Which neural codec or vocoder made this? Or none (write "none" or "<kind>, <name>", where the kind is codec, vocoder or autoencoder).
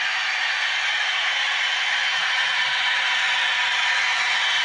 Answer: none